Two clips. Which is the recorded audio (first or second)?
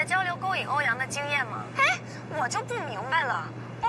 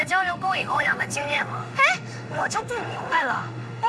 first